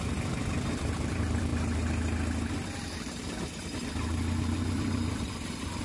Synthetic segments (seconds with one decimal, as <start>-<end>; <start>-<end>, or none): 0.0-1.5; 3.9-5.8